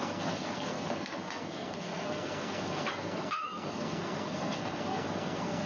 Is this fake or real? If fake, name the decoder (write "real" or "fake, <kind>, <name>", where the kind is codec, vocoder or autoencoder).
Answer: fake, codec, SNAC